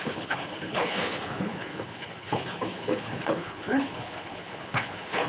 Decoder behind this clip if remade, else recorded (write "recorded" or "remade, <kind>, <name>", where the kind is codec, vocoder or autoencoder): remade, codec, HILCodec